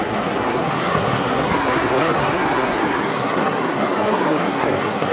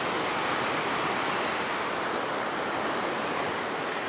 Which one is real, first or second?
second